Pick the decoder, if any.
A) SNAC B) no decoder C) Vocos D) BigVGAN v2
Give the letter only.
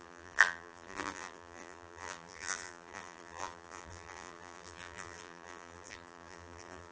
D